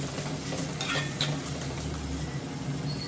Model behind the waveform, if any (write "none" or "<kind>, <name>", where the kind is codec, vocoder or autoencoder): none